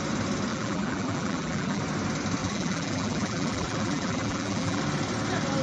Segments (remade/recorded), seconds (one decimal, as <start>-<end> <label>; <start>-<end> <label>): 0.0-0.5 recorded; 0.5-1.8 remade; 1.8-2.4 recorded; 2.4-4.8 remade; 4.8-5.6 recorded